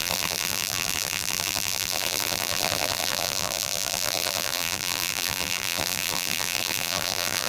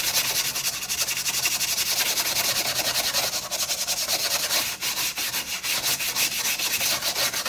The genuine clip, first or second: second